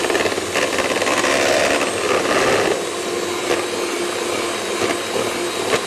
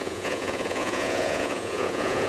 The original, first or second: first